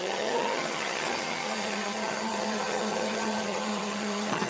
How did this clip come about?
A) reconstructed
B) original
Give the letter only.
A